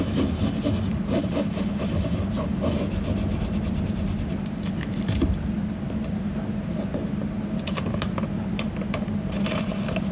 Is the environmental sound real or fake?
real